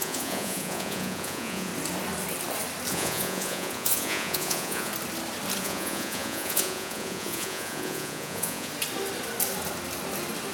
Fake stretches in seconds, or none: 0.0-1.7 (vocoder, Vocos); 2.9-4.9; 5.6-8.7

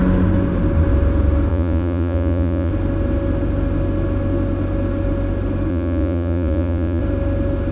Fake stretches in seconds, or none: 1.5-2.7 (vocoder, Vocos); 5.7-7.0

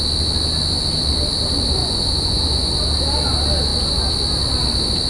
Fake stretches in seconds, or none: 1.8-2.7 (vocoder, Vocos)

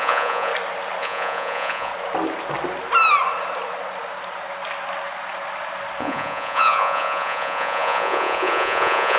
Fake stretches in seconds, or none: 0.0-0.5 (vocoder, Vocos); 1.0-1.9; 6.0-9.2

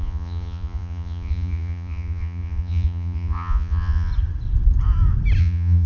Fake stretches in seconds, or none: 0.0-4.1 (vocoder, Vocos); 5.4-5.9